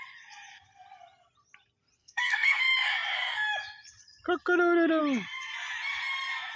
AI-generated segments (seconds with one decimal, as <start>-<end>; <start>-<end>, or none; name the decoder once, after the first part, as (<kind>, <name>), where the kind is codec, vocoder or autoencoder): 2.0-2.6 (codec, SNAC)

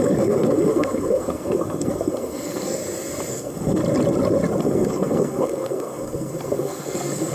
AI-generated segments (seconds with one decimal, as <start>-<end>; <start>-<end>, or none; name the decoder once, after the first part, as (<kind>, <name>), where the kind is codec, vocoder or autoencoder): 0.0-2.8 (codec, SNAC); 3.3-3.8; 4.6-7.3